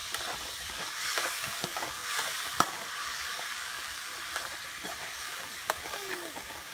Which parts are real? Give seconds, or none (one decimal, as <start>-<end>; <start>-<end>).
0.0-0.6; 4.1-5.0